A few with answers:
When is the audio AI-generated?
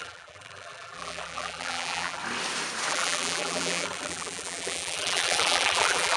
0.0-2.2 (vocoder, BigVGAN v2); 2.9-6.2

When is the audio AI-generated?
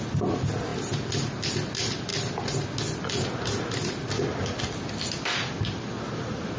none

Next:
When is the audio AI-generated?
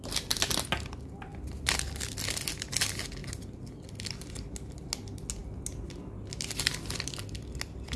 none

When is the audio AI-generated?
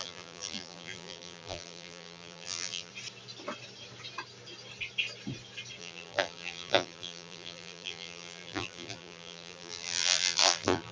0.0-2.9 (vocoder, BigVGAN v2); 5.8-10.9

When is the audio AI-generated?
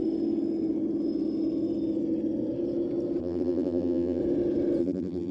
3.2-4.2 (vocoder, BigVGAN v2); 4.8-5.3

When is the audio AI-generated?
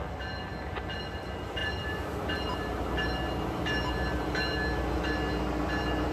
none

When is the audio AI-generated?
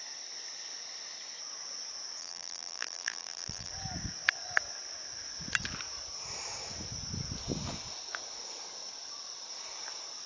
2.2-3.7 (vocoder, BigVGAN v2)